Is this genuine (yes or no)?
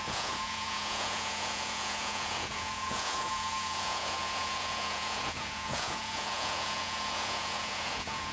no